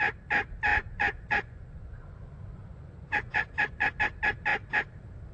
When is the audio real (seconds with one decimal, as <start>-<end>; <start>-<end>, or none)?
0.0-0.7; 3.9-5.3